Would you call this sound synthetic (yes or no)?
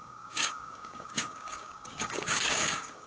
yes